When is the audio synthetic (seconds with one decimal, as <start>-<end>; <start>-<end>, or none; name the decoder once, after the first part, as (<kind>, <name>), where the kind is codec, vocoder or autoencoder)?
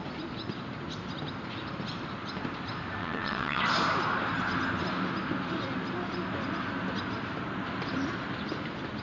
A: 3.0-3.6 (vocoder, WaveNeXt)